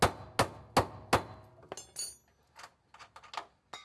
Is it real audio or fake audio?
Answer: real